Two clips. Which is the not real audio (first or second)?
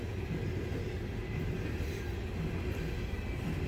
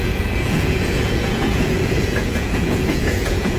second